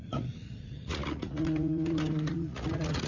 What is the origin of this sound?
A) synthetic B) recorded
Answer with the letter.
A